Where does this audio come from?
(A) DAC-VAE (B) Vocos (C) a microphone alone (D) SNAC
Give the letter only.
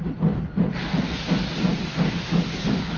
C